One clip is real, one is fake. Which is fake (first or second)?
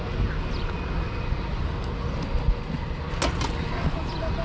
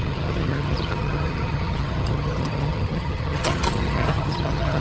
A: second